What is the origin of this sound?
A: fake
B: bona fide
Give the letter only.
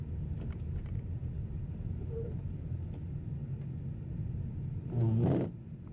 B